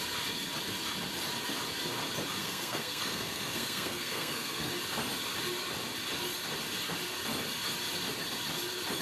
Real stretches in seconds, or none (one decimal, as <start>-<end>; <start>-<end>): 0.0-2.4; 4.7-9.0